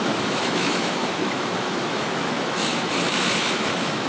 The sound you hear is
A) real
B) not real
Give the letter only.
B